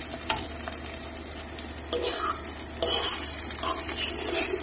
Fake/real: fake